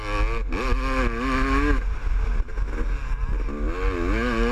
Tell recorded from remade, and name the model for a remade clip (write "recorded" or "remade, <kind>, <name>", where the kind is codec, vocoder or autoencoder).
recorded